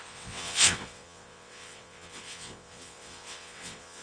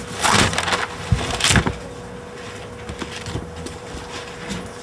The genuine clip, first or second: second